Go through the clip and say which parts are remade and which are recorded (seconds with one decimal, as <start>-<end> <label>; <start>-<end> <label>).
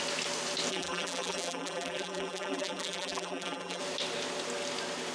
0.0-0.7 recorded; 0.7-3.8 remade; 3.8-5.1 recorded